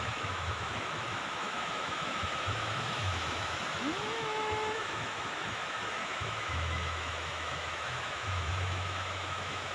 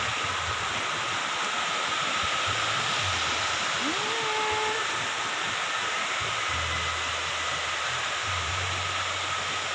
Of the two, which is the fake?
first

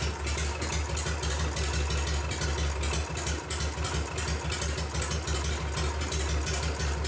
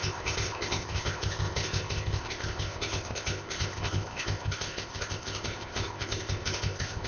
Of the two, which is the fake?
second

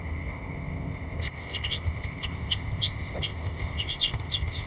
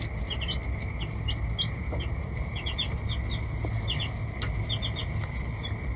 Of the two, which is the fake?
first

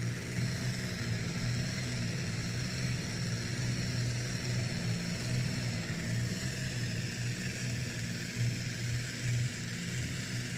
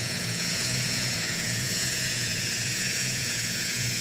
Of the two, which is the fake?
second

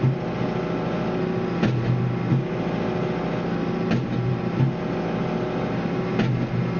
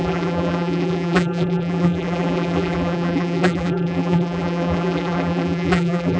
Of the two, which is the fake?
second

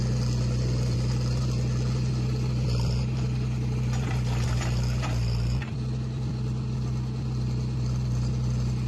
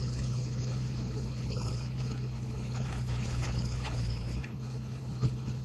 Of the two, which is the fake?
second